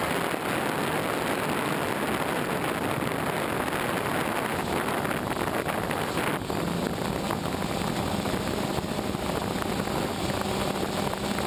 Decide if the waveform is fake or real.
real